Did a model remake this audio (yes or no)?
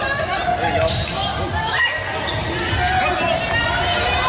no